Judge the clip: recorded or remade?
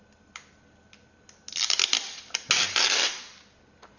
recorded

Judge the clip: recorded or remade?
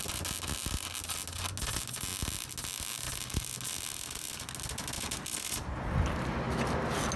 recorded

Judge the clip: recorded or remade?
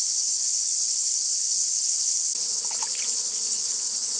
remade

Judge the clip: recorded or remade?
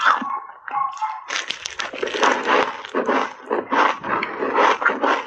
recorded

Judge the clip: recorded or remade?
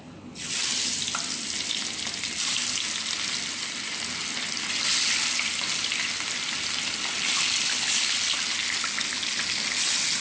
recorded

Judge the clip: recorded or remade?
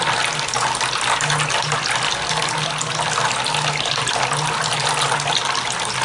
recorded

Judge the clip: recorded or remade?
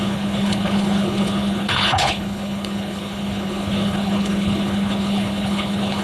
remade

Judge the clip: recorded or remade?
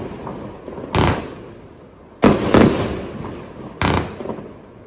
recorded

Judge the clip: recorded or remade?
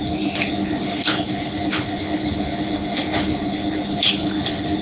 remade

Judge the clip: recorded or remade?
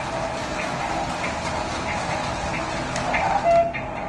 recorded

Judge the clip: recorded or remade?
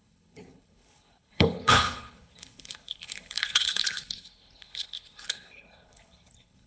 remade